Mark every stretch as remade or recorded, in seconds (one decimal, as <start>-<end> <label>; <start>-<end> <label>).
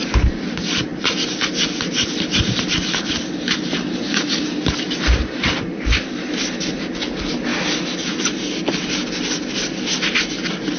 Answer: 0.0-10.8 recorded